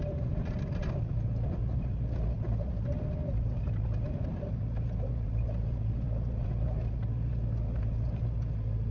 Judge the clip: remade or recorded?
recorded